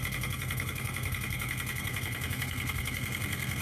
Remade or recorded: remade